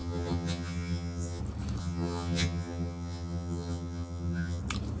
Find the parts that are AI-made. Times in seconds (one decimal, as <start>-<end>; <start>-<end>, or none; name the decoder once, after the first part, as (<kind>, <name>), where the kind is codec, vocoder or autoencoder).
0.0-1.4 (vocoder, HiFi-GAN); 1.8-4.6